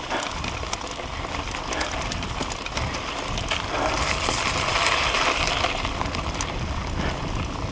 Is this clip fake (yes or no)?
no